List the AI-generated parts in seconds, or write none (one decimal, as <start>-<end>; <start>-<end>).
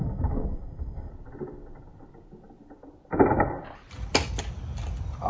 0.0-1.1